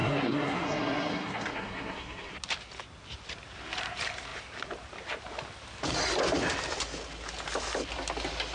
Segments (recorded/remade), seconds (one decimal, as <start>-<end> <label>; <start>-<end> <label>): 0.0-2.3 remade; 2.3-8.5 recorded